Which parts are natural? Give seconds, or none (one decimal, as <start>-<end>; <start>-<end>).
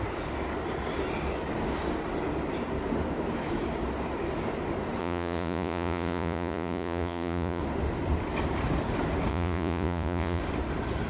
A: 0.0-5.0; 7.6-9.3; 10.4-11.1